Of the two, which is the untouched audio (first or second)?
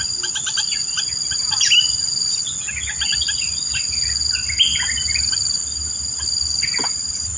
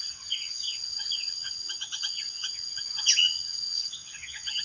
first